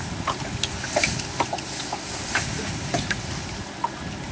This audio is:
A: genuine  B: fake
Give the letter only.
A